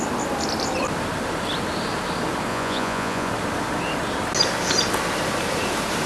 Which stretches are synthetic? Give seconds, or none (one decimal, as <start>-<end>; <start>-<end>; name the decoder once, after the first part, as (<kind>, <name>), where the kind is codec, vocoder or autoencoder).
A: 2.5-3.3 (vocoder, Vocos)